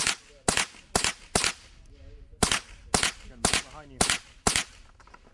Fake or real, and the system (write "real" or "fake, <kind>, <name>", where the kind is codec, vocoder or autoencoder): real